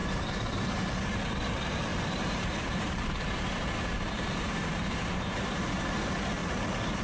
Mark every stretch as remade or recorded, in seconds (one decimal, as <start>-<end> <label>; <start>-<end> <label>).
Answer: 0.0-0.9 remade; 0.9-1.9 recorded; 1.9-5.9 remade; 5.9-7.0 recorded